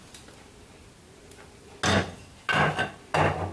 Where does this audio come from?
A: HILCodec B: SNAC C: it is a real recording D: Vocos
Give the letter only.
C